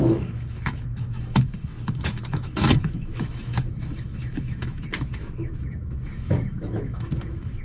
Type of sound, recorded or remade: remade